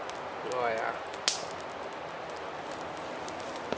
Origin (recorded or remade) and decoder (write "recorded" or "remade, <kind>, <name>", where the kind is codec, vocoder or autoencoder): recorded